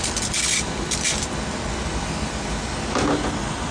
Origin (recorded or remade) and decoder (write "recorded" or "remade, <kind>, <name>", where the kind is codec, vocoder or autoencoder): recorded